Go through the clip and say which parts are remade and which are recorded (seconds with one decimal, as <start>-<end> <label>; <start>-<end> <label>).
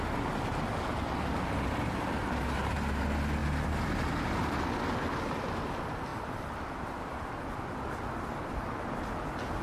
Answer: 0.0-9.6 recorded